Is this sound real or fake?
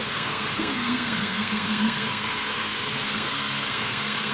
fake